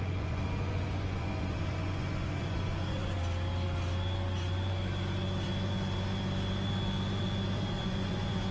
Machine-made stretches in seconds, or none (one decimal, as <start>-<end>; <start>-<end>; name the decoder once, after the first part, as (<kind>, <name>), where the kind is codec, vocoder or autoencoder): 0.0-3.2 (vocoder, Vocos); 7.8-8.5